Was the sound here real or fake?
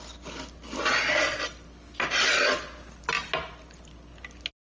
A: real